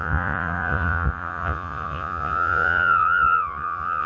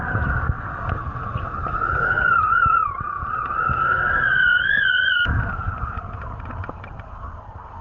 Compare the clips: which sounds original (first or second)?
second